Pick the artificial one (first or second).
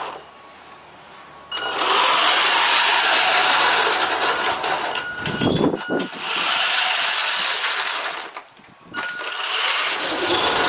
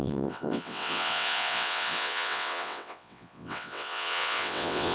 second